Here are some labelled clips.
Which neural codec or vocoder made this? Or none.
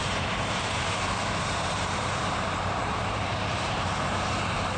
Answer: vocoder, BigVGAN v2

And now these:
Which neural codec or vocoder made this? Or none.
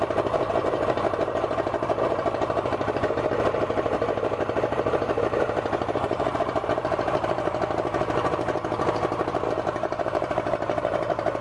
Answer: vocoder, BigVGAN v2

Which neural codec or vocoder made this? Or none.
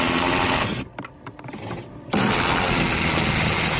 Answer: none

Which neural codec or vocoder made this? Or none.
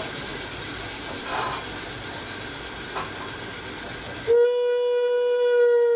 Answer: none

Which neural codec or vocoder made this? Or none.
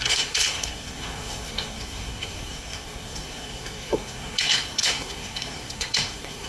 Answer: codec, SNAC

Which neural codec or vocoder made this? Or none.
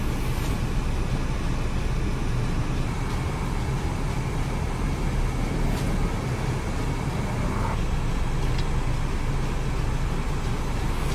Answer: none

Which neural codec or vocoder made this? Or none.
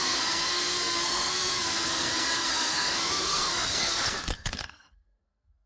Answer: codec, SNAC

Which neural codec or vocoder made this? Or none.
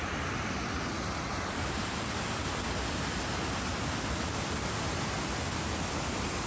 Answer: none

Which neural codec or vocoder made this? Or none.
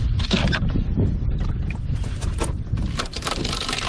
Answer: none